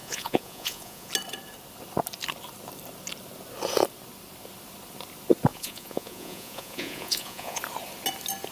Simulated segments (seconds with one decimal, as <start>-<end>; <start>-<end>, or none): 0.0-1.1; 5.5-7.6